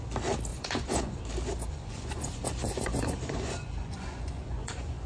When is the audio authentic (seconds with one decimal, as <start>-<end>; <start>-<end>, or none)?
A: 0.0-0.5; 1.2-1.7